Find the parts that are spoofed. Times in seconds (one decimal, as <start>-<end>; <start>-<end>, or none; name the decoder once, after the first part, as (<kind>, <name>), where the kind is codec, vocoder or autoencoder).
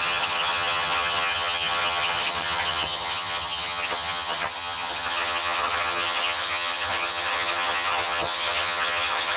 0.0-9.4 (vocoder, HiFi-GAN)